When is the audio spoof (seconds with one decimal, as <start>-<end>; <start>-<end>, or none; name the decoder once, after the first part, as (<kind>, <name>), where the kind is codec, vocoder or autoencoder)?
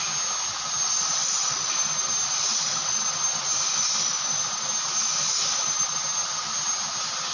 none